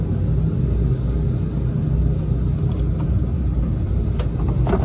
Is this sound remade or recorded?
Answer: recorded